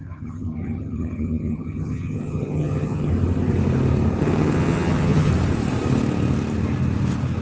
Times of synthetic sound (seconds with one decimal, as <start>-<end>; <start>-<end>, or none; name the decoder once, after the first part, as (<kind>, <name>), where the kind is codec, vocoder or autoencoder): 0.0-3.1 (vocoder, HiFi-GAN); 4.2-5.3

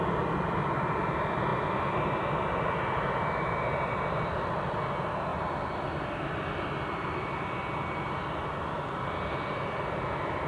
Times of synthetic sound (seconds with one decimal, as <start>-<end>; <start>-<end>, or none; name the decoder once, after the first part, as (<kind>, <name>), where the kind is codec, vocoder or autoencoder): none

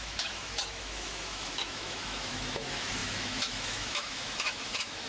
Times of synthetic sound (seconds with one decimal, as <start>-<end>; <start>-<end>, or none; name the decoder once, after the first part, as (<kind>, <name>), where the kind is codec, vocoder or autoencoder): 0.0-5.1 (autoencoder, DAC-VAE)

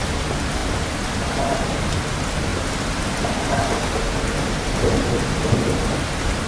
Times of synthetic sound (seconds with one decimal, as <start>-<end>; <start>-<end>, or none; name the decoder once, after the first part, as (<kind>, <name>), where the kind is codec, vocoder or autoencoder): none